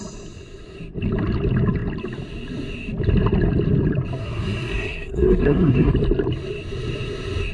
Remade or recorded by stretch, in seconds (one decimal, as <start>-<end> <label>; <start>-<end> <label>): 0.0-4.2 recorded; 4.2-5.9 remade; 5.9-7.5 recorded